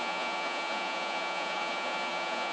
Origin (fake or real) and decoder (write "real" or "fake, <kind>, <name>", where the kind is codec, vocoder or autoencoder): fake, vocoder, Vocos